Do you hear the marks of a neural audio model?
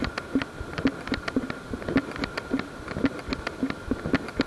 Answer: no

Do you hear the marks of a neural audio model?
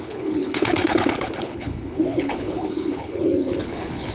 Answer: yes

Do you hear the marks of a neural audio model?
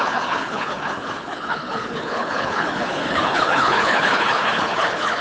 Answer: yes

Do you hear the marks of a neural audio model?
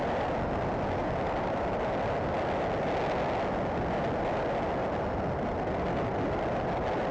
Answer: no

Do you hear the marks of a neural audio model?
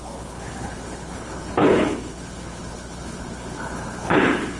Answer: yes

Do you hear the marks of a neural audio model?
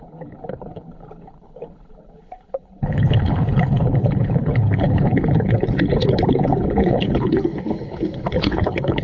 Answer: yes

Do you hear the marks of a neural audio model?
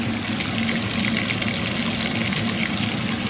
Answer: no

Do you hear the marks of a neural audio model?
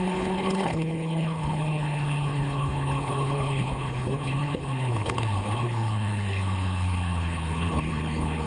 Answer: yes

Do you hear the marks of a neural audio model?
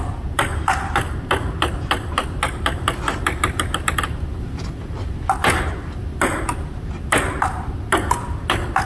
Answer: no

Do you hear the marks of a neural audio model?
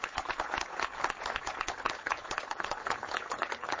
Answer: yes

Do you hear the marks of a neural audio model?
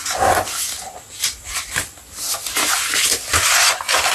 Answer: no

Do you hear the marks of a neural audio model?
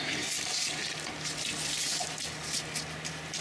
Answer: no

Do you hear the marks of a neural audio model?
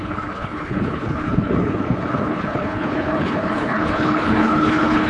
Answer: yes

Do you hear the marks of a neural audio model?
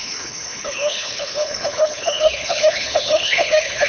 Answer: yes